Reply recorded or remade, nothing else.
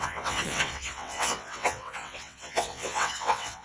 remade